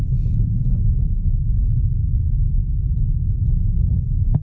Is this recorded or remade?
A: recorded